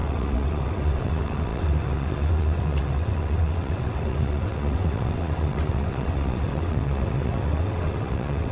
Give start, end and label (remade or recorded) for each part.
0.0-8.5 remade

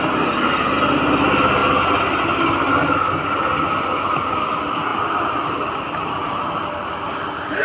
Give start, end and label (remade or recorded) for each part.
0.0-2.7 recorded; 2.7-3.4 remade; 3.4-7.6 recorded